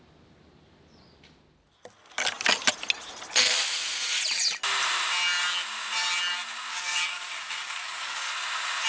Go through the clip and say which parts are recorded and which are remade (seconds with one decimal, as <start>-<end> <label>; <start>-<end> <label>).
0.0-6.7 recorded; 6.7-8.2 remade; 8.2-8.9 recorded